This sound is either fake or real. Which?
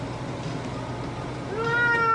real